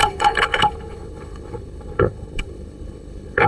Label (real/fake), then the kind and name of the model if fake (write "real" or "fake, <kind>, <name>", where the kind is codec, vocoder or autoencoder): fake, codec, HILCodec